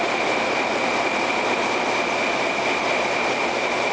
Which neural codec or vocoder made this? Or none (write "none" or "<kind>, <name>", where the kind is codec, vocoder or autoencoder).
none